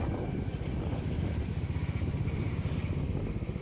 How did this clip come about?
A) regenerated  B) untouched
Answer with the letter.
B